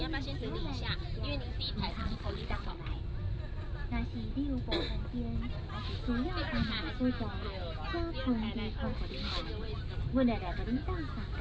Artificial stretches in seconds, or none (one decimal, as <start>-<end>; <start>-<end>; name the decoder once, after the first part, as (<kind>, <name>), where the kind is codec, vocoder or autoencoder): 2.0-2.8 (vocoder, Vocos)

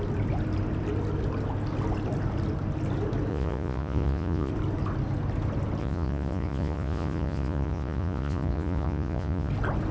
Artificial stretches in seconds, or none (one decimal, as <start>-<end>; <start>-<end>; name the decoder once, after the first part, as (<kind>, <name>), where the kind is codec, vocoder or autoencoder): 3.3-4.5 (vocoder, Vocos); 5.8-9.5